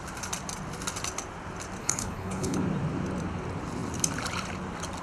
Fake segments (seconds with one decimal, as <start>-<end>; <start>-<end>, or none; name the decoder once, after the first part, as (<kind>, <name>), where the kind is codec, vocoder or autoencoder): 1.8-2.6 (codec, HILCodec)